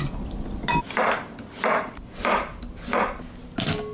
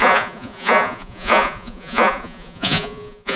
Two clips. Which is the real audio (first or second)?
first